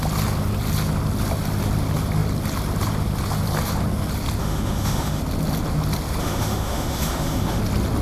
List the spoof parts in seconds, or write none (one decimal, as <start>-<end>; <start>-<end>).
4.4-5.2; 6.2-7.6